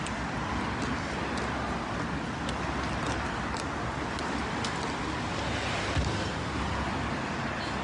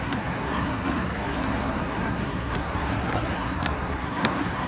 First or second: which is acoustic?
first